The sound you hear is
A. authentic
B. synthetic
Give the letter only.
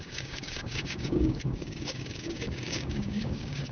B